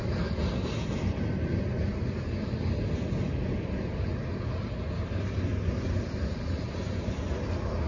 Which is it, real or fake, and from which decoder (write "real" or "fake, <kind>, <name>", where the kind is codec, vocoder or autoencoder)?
real